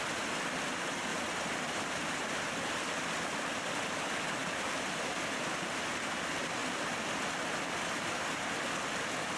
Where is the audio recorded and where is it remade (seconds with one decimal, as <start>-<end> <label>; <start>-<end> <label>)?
0.0-1.1 recorded; 1.1-1.8 remade; 1.8-4.4 recorded; 4.4-6.1 remade; 6.1-9.4 recorded